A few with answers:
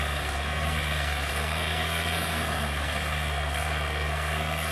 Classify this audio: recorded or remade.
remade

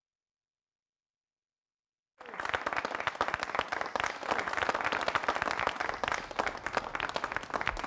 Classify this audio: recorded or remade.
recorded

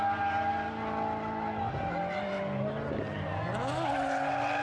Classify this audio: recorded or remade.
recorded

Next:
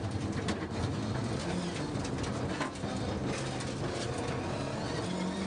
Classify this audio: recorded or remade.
recorded